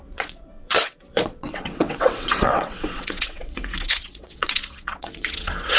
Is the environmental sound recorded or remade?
remade